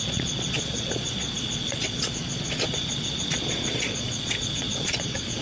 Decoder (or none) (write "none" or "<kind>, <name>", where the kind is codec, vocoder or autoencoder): vocoder, Vocos